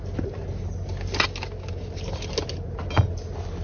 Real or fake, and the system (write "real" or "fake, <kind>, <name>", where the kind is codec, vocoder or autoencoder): real